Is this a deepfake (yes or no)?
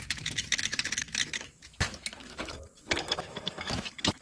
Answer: yes